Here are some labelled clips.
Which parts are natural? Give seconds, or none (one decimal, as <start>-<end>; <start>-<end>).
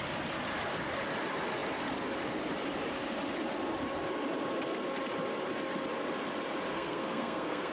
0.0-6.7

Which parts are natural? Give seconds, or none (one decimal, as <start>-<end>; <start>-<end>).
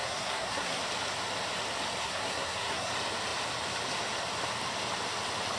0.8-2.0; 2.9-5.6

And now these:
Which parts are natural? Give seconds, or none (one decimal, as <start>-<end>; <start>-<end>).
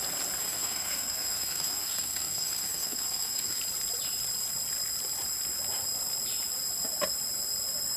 0.0-0.4; 3.6-8.0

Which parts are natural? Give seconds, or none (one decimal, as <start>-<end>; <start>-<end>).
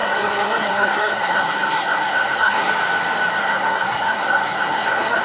2.7-3.4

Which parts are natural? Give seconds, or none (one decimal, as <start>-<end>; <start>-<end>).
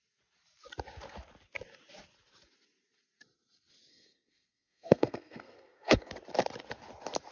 0.0-3.9; 6.1-7.3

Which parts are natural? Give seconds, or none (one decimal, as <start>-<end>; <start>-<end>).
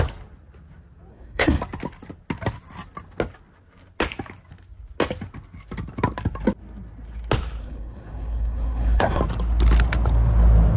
0.0-1.1; 1.6-7.6; 9.2-10.8